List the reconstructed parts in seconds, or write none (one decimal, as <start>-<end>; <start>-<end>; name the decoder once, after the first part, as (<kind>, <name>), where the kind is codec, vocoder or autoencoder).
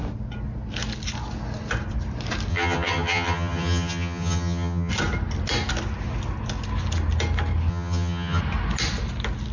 2.5-4.9 (vocoder, HiFi-GAN); 7.7-8.4